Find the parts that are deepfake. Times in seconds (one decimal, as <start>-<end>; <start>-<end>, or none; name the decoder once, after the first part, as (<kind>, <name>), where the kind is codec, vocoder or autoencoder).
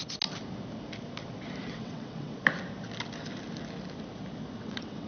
1.6-2.3 (vocoder, WaveNeXt); 4.6-5.1